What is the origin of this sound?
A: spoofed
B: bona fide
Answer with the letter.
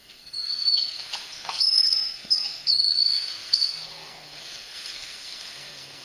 A